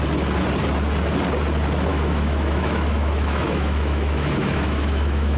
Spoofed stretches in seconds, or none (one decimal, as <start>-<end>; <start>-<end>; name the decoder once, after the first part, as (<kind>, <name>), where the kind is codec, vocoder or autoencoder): 1.9-5.4 (autoencoder, DAC-VAE)